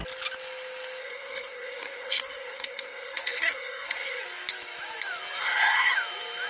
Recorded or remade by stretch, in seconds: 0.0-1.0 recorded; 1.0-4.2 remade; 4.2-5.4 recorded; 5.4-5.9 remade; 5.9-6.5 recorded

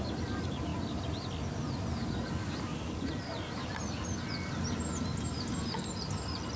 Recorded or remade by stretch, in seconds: 0.0-6.6 recorded

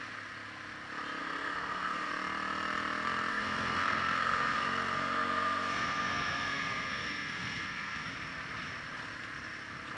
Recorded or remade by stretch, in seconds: 0.0-1.2 recorded; 1.2-2.1 remade; 2.1-3.3 recorded; 3.3-8.1 remade; 8.1-10.0 recorded

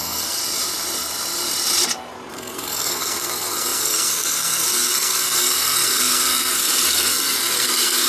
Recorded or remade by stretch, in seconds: 0.0-0.4 remade; 0.4-2.3 recorded; 2.3-8.1 remade

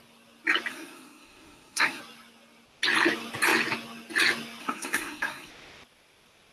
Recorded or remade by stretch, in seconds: 0.0-0.7 recorded; 0.7-2.0 remade; 2.0-4.6 recorded; 4.6-5.5 remade; 5.5-6.5 recorded

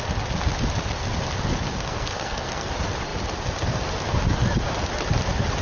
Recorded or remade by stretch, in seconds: 0.0-1.7 recorded; 1.7-2.7 remade; 2.7-5.6 recorded

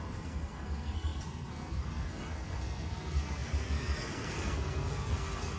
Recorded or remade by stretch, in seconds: 0.0-5.6 remade